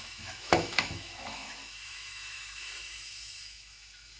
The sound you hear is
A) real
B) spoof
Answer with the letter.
B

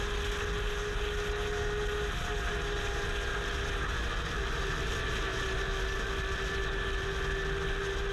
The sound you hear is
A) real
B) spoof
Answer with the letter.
A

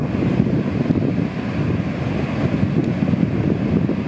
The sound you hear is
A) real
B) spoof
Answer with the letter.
A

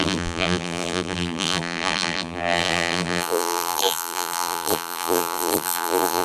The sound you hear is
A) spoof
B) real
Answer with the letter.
A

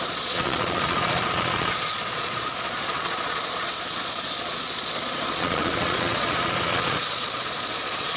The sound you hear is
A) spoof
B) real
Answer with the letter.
A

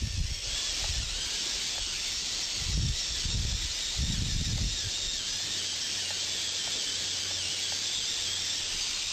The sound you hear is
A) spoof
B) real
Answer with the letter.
B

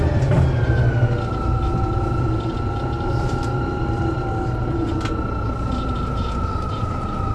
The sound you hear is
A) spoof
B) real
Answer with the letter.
B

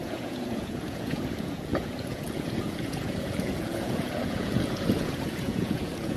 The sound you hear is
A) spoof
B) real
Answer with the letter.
A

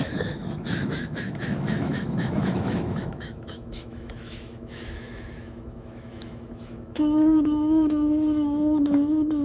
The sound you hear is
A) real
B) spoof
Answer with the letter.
B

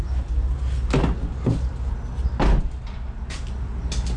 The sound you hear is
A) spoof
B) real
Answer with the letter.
B